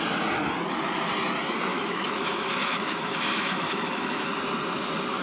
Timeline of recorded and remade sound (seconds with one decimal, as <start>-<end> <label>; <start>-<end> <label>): 0.0-1.7 recorded; 1.7-4.3 remade; 4.3-5.2 recorded